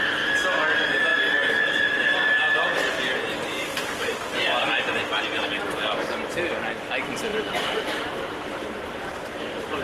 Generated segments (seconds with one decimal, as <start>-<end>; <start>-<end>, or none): 7.3-9.2